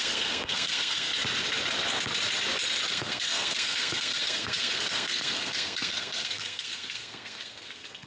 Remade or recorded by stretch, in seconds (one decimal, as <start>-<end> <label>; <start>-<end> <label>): 0.0-1.1 remade; 1.1-2.9 recorded; 2.9-8.1 remade